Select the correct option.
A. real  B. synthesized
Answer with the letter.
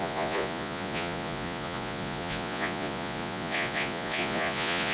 B